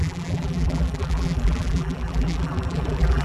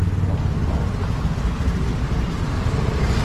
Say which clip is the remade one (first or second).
first